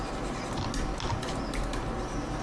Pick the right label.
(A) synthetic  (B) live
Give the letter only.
B